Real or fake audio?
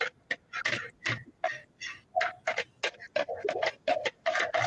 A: real